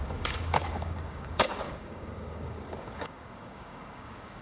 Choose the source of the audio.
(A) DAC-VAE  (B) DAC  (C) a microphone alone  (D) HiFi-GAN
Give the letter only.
B